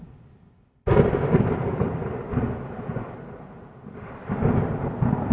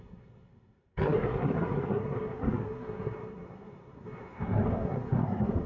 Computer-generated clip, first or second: second